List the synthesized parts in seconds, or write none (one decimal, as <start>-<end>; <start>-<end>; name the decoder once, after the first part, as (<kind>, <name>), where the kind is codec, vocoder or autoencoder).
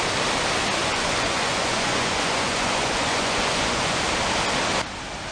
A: 0.8-4.0 (vocoder, Vocos)